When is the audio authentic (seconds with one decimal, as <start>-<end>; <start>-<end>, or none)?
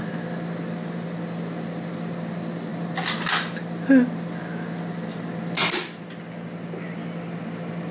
0.0-7.9